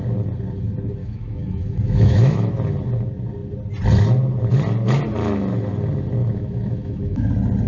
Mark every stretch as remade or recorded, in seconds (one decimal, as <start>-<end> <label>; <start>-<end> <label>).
0.0-1.0 recorded; 1.0-2.5 remade; 2.5-6.2 recorded; 6.2-7.3 remade; 7.3-7.7 recorded

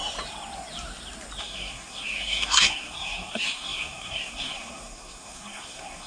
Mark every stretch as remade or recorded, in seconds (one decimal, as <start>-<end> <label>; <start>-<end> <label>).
0.0-1.4 recorded; 1.4-6.1 remade

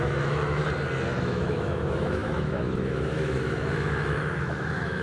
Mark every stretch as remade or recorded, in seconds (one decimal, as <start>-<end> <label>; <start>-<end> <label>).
0.0-0.6 remade; 0.6-1.2 recorded; 1.2-5.0 remade

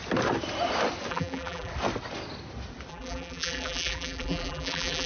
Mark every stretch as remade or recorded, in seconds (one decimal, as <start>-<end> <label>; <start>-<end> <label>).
0.0-1.1 recorded; 1.1-1.7 remade; 1.7-2.9 recorded; 2.9-5.1 remade

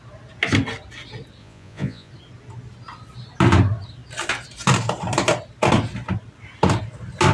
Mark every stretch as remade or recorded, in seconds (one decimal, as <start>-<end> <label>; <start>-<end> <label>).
0.0-1.4 recorded; 1.4-2.1 remade; 2.1-7.3 recorded

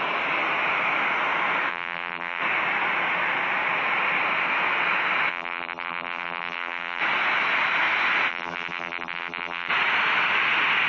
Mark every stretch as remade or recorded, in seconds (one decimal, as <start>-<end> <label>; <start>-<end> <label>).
0.0-1.7 recorded; 1.7-2.4 remade; 2.4-5.3 recorded; 5.3-7.0 remade; 7.0-8.3 recorded; 8.3-9.7 remade; 9.7-10.9 recorded

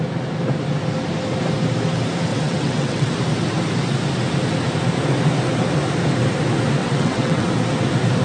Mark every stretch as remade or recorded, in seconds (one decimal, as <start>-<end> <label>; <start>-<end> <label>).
0.0-2.3 recorded; 2.3-3.1 remade; 3.1-6.8 recorded; 6.8-7.5 remade; 7.5-8.2 recorded